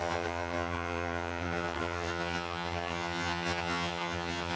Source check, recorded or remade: remade